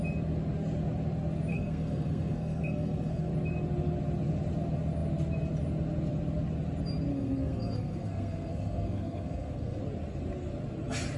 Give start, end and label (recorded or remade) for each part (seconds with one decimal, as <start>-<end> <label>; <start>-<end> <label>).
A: 0.0-1.5 recorded; 1.5-3.3 remade; 3.3-7.1 recorded; 7.1-9.8 remade; 9.8-11.2 recorded

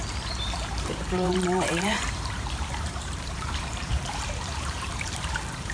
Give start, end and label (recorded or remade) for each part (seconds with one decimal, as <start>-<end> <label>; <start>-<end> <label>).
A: 0.0-5.7 remade

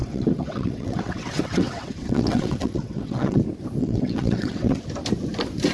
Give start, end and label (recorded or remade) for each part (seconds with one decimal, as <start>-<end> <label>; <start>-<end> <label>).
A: 0.0-3.4 remade; 3.4-3.8 recorded; 3.8-4.8 remade; 4.8-5.7 recorded

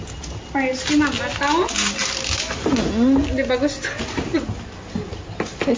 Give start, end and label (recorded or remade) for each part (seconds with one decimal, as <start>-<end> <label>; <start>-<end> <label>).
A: 0.0-4.3 recorded; 4.3-4.8 remade; 4.8-5.8 recorded